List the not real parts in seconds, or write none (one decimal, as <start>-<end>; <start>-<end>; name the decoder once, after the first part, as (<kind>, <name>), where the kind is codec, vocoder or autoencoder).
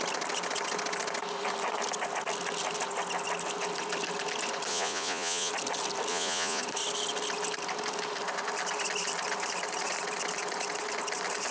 4.7-5.5 (vocoder, Vocos); 6.1-6.6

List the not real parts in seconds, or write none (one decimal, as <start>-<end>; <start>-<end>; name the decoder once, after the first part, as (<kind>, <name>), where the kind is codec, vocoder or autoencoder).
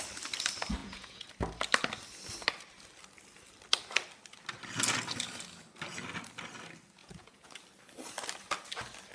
0.8-1.3 (vocoder, Vocos); 7.0-7.5